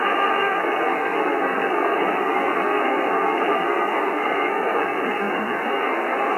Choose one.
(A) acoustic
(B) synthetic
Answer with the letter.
B